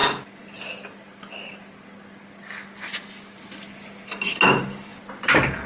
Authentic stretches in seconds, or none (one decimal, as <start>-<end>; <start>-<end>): 0.0-5.7